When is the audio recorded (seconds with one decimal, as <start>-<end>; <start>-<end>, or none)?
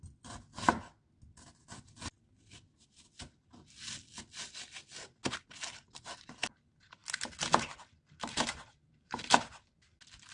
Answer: 0.0-10.3